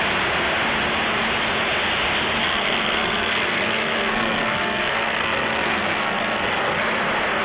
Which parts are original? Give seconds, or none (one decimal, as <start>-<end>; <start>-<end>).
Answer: 0.0-2.4; 6.8-7.4